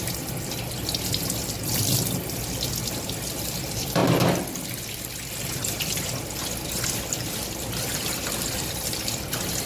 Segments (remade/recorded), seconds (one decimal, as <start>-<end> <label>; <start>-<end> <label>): 0.0-9.7 recorded